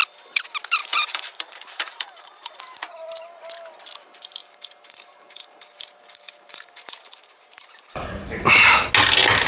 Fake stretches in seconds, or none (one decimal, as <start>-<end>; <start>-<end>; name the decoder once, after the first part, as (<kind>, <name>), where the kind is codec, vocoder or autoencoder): 0.8-2.5 (vocoder, BigVGAN v2); 4.4-8.9